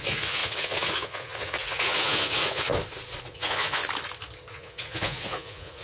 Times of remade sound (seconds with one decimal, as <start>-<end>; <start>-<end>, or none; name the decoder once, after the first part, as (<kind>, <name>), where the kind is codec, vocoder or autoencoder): 0.0-2.7 (vocoder, Vocos); 3.2-3.8; 4.5-5.8